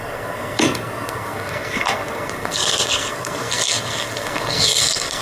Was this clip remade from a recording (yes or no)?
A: yes